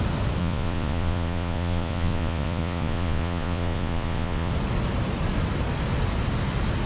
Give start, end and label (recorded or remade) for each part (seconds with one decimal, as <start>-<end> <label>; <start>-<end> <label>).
0.0-0.4 recorded; 0.4-4.5 remade; 4.5-6.9 recorded